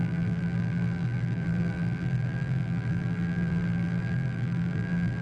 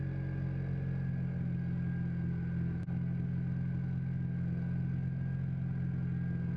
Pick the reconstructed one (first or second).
first